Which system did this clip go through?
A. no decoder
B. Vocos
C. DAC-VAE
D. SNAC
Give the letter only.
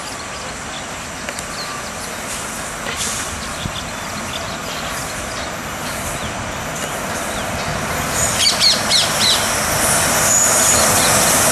A